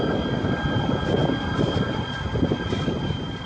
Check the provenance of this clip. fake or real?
real